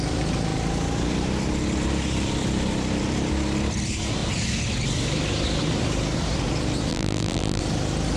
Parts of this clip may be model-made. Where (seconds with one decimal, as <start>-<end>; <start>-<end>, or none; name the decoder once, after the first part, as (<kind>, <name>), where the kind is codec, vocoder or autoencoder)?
6.9-7.6 (vocoder, BigVGAN v2)